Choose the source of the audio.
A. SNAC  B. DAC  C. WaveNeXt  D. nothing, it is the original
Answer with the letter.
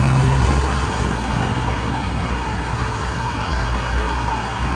A